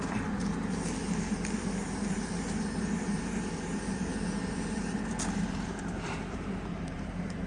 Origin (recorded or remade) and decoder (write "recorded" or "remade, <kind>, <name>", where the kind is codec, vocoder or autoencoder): remade, vocoder, BigVGAN v2